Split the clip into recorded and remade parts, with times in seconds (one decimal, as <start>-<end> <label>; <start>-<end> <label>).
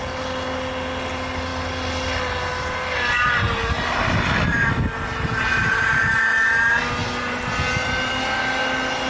0.0-9.1 recorded